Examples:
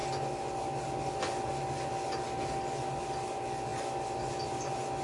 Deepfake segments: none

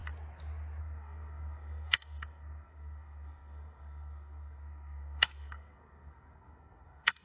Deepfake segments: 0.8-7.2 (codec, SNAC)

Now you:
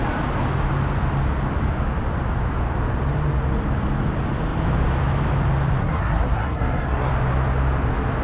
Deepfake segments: 5.8-7.1 (codec, SNAC)

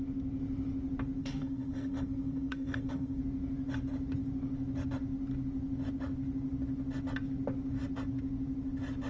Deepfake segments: 1.2-3.2 (codec, SNAC)